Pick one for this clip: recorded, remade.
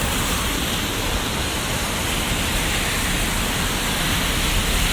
recorded